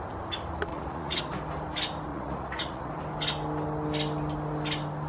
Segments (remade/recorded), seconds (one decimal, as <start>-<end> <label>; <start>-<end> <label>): 0.0-0.7 recorded; 0.7-1.2 remade; 1.2-2.1 recorded; 2.1-2.9 remade; 2.9-5.1 recorded